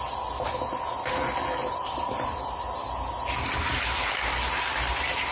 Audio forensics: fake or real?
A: real